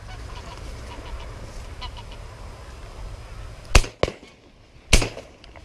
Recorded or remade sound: recorded